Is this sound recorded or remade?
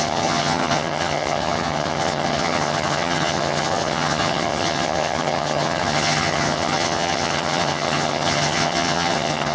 remade